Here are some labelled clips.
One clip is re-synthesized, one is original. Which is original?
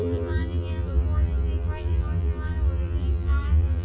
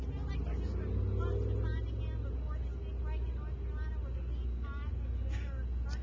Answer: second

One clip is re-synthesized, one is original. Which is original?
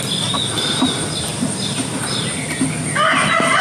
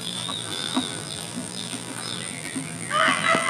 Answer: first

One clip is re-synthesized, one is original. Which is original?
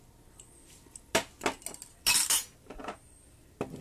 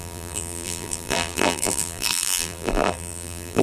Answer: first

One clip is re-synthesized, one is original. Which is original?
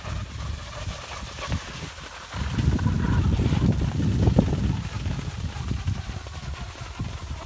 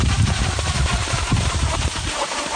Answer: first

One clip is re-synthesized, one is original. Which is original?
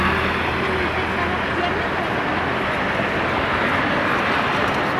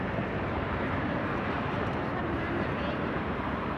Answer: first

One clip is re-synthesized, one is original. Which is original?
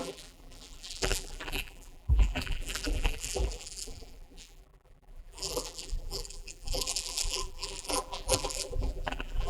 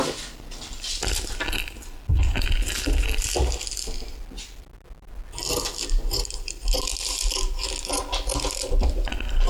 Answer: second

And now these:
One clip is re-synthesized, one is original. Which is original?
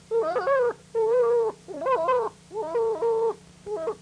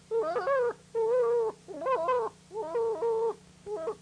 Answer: second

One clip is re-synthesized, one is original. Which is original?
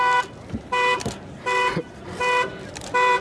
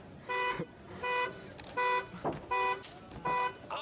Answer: second